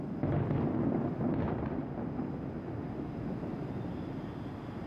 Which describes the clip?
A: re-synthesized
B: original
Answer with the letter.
B